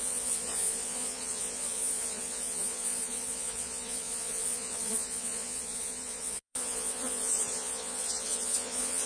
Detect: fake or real fake